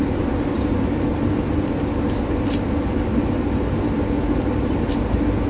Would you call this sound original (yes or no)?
yes